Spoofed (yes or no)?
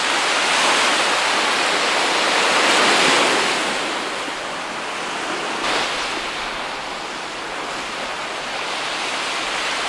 no